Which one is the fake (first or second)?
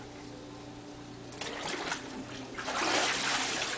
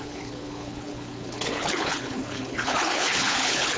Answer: second